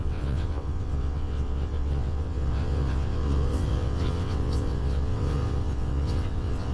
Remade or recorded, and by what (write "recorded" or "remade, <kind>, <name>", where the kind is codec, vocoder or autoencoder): remade, vocoder, WaveNeXt